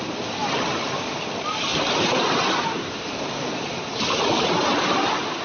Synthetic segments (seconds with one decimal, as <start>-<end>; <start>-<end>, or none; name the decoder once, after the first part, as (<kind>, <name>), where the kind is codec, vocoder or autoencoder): 1.7-4.9 (vocoder, BigVGAN v2)